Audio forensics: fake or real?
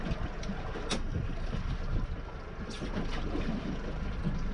real